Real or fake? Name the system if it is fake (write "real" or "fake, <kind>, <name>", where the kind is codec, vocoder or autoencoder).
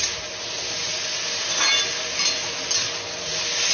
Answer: real